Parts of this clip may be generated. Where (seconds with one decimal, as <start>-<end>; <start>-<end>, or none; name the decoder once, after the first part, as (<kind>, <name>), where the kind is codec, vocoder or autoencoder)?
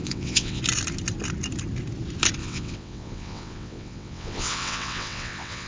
0.0-0.6 (vocoder, WaveNeXt); 2.4-5.7